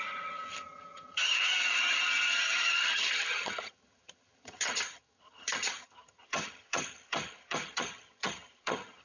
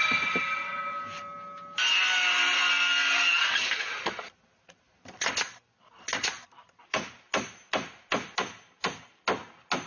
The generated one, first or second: first